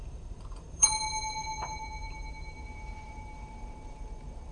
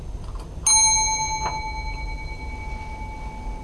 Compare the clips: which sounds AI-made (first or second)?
first